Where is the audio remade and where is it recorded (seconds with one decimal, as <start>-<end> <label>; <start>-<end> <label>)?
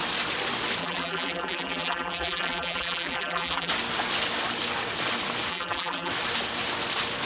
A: 0.0-0.8 recorded; 0.8-3.7 remade; 3.7-5.5 recorded; 5.5-6.1 remade; 6.1-7.3 recorded